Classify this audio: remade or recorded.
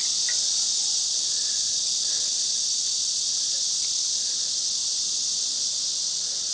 recorded